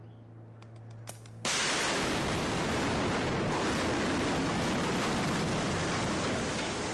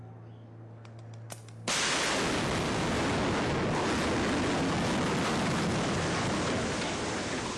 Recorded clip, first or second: second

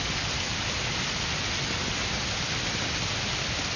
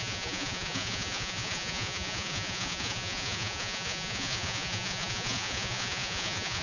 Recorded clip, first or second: first